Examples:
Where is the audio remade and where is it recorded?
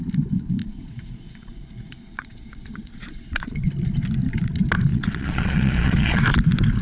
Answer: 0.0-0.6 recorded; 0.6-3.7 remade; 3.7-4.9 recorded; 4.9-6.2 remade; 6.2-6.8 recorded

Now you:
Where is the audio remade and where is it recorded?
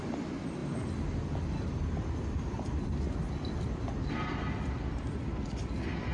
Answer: 0.0-6.1 recorded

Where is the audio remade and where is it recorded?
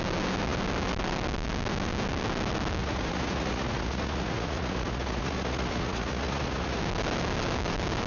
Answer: 0.0-2.8 recorded; 2.8-6.8 remade; 6.8-8.1 recorded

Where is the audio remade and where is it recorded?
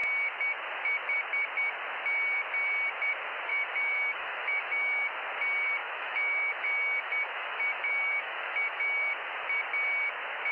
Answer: 0.0-3.5 recorded; 3.5-5.1 remade; 5.1-5.8 recorded; 5.8-9.1 remade; 9.1-10.5 recorded